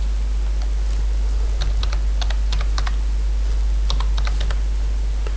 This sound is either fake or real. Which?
real